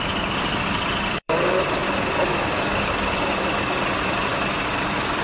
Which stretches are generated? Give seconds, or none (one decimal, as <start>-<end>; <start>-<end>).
0.0-1.8; 3.9-4.3; 4.8-5.2